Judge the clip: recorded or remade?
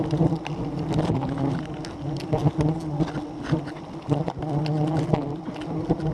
recorded